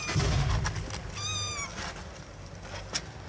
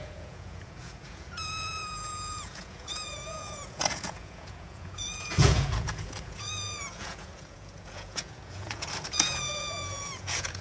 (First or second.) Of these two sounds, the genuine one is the first